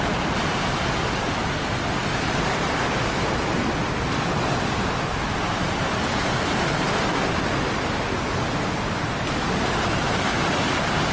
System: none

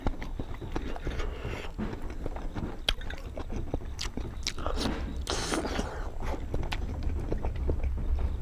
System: none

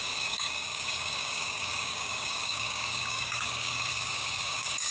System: codec, DAC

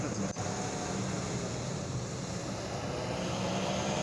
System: none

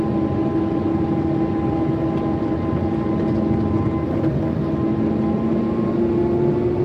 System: none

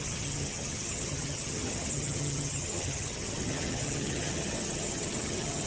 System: vocoder, HiFi-GAN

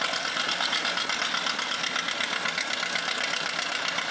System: vocoder, BigVGAN v2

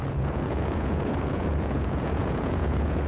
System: vocoder, Vocos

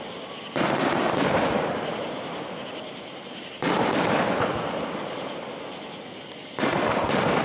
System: none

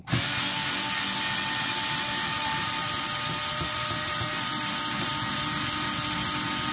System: none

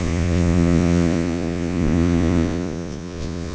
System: vocoder, Vocos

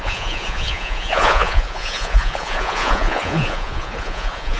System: vocoder, Vocos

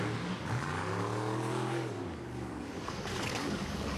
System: codec, DAC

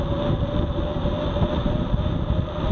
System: none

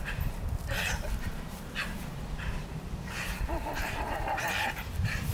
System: vocoder, BigVGAN v2